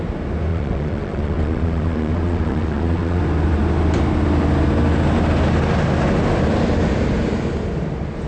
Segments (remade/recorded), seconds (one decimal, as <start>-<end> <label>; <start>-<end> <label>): 0.0-0.5 recorded; 0.5-3.2 remade; 3.2-8.3 recorded